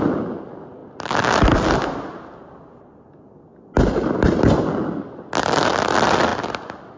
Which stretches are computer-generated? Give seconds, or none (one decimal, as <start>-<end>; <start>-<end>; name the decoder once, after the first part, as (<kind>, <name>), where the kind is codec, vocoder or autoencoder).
none